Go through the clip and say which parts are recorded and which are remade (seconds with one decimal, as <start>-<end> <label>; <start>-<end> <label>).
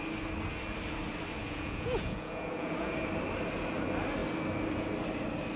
0.0-1.4 recorded; 1.4-2.9 remade; 2.9-5.6 recorded